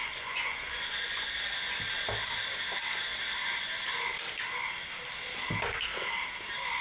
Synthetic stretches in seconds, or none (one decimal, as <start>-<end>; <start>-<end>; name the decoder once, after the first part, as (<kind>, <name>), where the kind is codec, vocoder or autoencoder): 0.0-1.3 (vocoder, Vocos)